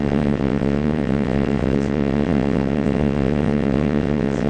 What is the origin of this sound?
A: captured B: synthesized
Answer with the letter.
B